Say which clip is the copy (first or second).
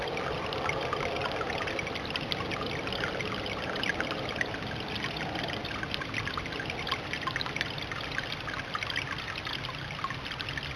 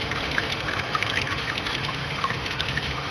second